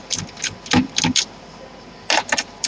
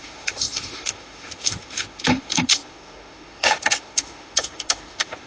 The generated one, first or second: second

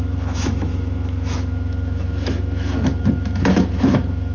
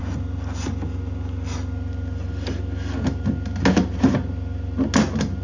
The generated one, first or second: first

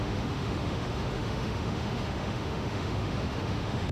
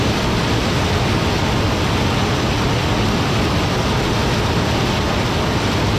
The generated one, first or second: first